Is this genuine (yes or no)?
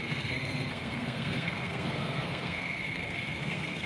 no